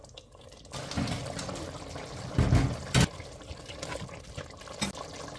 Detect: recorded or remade recorded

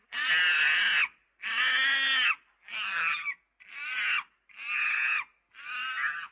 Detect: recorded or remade recorded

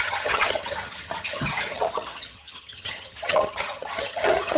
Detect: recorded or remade remade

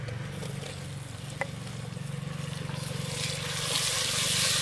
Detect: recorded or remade recorded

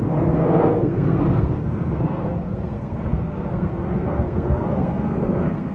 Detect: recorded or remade remade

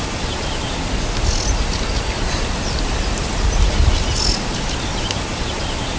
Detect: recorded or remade recorded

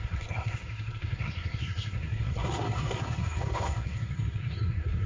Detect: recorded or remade remade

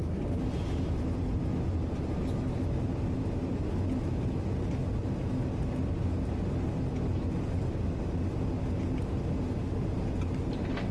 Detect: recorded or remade recorded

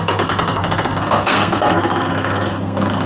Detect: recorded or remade remade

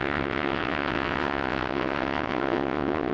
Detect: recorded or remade remade